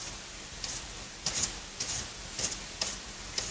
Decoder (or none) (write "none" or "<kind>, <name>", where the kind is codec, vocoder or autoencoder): none